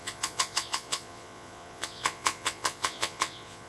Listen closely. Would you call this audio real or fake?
fake